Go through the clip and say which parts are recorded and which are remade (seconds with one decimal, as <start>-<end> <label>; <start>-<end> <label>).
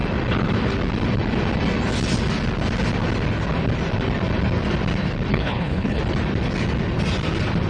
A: 0.0-5.3 recorded; 5.3-6.0 remade; 6.0-7.7 recorded